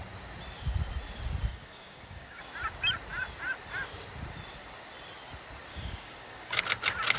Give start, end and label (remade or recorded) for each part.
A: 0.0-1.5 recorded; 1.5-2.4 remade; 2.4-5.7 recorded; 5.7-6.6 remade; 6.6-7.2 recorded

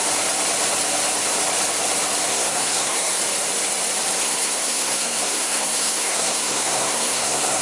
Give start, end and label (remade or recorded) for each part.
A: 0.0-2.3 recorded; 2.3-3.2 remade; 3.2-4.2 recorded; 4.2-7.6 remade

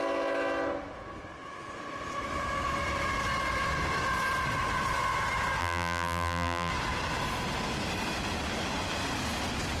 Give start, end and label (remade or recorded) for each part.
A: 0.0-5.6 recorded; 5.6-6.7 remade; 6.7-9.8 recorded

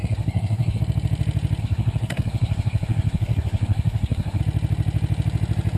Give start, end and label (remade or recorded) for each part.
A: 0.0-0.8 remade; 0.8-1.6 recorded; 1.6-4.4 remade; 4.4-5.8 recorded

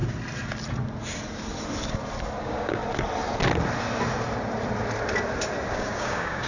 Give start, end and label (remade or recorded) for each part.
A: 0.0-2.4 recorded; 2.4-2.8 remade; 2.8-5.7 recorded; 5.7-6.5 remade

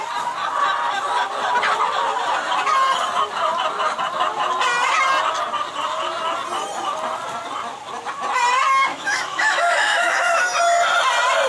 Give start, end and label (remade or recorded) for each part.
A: 0.0-8.9 recorded; 8.9-10.4 remade; 10.4-11.5 recorded